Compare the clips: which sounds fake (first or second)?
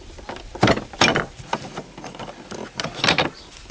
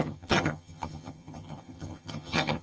second